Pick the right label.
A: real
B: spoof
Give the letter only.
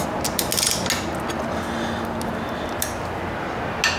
A